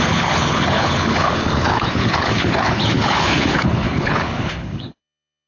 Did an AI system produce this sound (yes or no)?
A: yes